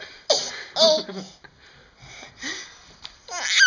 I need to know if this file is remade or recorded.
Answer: recorded